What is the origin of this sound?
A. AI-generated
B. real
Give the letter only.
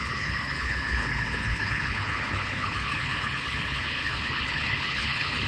A